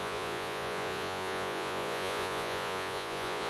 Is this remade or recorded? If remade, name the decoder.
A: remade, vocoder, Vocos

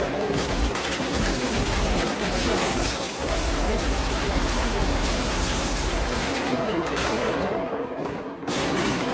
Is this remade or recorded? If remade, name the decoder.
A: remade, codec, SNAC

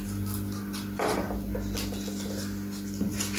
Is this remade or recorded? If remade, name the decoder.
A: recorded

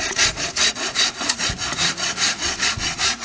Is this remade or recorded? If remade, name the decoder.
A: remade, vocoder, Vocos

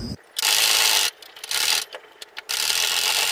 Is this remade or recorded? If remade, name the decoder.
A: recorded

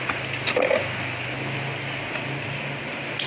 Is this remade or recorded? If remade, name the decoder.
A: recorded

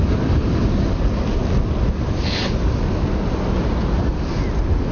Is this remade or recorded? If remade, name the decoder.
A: recorded